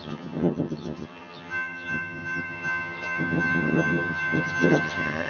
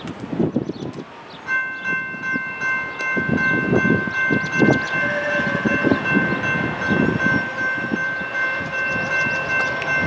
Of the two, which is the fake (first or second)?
first